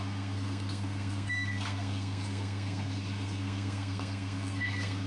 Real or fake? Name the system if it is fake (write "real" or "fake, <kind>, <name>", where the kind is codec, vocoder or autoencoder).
fake, codec, SNAC